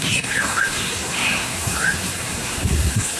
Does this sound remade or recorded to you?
remade